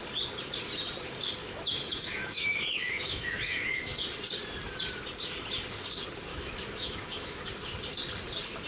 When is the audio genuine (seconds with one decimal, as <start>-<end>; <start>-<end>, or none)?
0.0-1.4; 4.0-6.3; 7.5-8.7